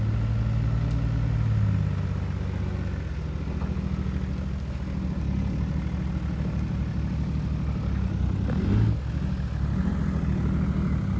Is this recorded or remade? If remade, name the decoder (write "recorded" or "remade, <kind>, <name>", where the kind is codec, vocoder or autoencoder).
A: recorded